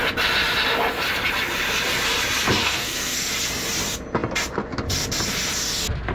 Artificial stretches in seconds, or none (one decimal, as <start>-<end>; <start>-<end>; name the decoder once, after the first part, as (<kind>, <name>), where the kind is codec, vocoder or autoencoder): 2.6-3.3 (codec, SNAC)